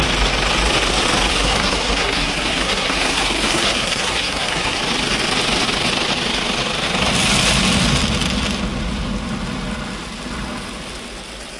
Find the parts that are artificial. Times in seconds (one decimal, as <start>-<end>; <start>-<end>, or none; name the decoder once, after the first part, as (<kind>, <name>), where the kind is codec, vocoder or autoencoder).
1.3-4.8 (codec, SNAC)

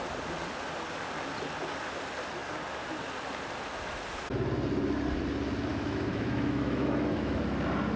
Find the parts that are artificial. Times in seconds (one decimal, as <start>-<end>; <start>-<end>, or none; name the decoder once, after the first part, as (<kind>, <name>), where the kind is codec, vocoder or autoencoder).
5.7-7.4 (autoencoder, DAC-VAE)

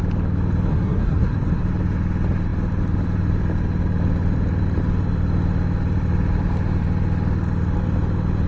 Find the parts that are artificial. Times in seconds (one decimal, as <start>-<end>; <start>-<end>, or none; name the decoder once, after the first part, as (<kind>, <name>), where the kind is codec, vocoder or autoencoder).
0.7-1.6 (codec, SNAC)